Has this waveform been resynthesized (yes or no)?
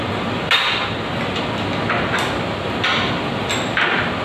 no